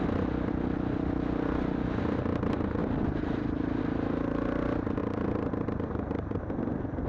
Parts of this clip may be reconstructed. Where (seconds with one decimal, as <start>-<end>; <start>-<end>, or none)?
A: 2.8-3.8; 5.0-6.5